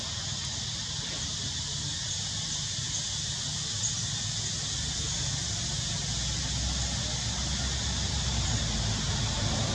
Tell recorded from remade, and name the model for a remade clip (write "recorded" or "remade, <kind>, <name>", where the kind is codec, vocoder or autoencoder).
recorded